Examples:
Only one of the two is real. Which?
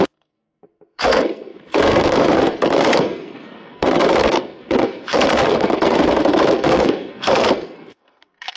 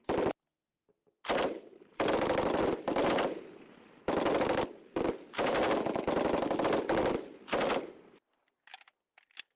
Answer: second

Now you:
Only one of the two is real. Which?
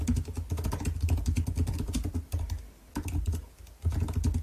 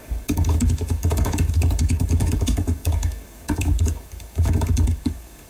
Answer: first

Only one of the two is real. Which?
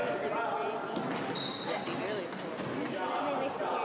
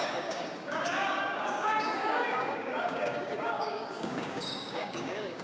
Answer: first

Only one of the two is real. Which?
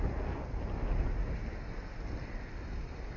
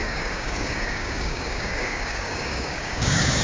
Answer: first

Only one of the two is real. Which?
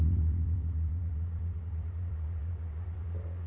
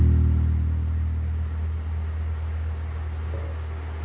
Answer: second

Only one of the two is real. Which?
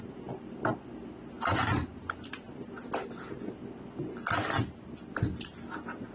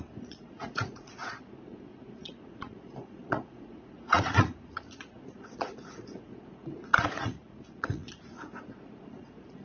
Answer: first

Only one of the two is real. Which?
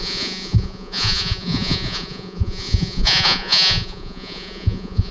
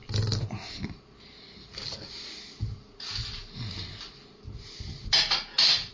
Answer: second